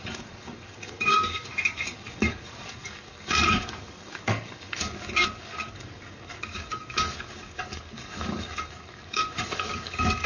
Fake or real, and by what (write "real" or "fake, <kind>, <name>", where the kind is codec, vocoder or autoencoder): fake, codec, DAC